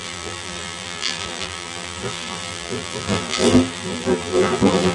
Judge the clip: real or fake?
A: fake